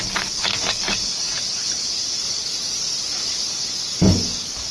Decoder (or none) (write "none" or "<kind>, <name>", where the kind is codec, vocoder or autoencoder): codec, DAC